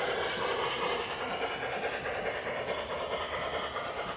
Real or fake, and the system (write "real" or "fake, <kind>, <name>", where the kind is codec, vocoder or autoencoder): real